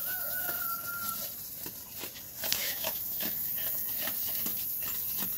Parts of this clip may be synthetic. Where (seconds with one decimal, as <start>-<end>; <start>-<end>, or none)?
0.0-0.6; 2.6-3.5